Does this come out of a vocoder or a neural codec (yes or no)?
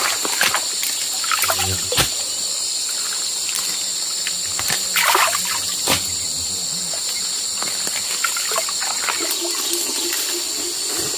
no